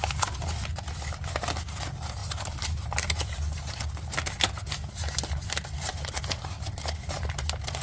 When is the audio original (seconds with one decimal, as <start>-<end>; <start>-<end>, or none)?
0.0-7.8